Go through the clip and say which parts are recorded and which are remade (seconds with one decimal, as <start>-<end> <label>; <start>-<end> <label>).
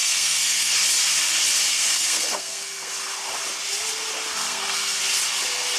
0.0-0.7 remade; 0.7-1.7 recorded; 1.7-2.9 remade; 2.9-4.4 recorded; 4.4-5.0 remade; 5.0-5.8 recorded